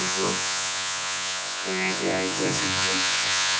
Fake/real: fake